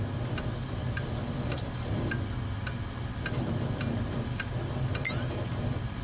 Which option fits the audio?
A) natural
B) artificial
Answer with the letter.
A